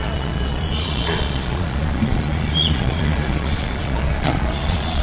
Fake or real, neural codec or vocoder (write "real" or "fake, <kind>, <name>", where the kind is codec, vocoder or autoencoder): fake, vocoder, Vocos